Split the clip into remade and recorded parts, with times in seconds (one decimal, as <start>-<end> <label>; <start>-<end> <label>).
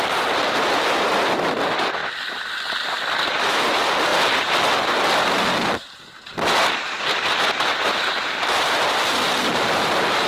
0.0-4.1 remade; 4.1-8.4 recorded; 8.4-10.3 remade